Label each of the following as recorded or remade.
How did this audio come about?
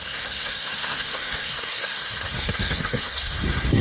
remade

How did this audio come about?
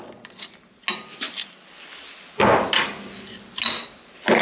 recorded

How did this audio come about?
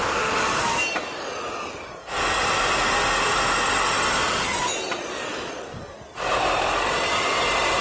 remade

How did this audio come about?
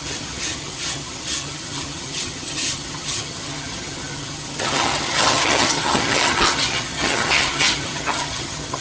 remade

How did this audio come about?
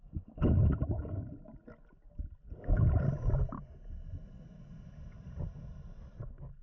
recorded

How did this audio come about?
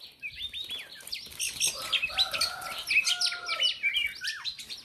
recorded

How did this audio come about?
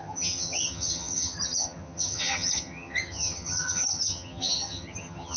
remade